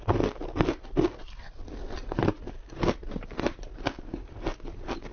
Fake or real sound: real